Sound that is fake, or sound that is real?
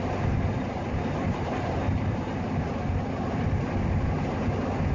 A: real